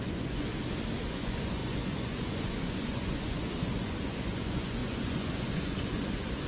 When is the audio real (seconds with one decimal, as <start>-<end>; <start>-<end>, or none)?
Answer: 0.5-1.1